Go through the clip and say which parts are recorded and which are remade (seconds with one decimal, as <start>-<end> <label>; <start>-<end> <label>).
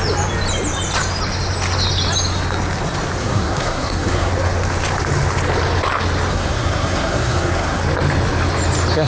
0.0-3.2 recorded; 3.2-4.3 remade; 4.3-6.3 recorded; 6.3-7.8 remade; 7.8-9.1 recorded